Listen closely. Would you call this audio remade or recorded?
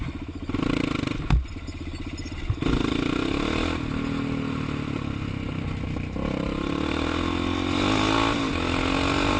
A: recorded